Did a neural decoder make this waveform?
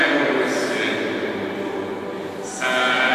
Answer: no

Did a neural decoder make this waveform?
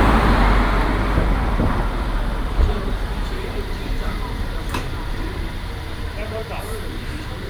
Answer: yes